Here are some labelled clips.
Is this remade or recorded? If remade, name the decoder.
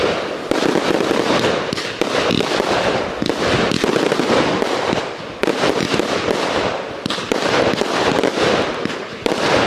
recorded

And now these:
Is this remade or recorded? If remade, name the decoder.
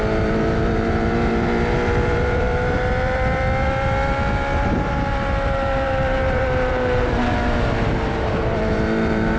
remade, vocoder, BigVGAN v2